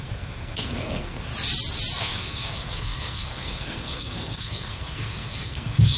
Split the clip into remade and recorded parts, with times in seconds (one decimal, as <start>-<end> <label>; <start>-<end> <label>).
0.0-1.3 remade; 1.3-2.0 recorded; 2.0-6.0 remade